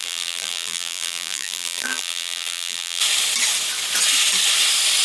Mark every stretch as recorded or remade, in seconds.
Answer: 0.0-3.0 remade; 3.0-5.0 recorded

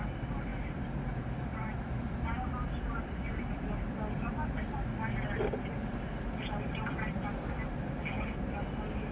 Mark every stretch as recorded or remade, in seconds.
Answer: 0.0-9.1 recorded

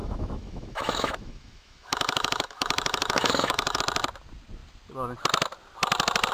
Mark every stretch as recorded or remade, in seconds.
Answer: 0.0-3.8 remade; 3.8-6.3 recorded

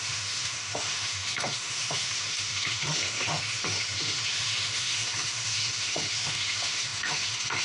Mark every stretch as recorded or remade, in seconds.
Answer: 0.0-7.6 remade

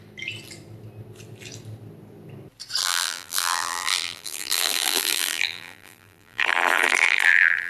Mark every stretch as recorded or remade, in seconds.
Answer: 0.0-2.8 recorded; 2.8-7.7 remade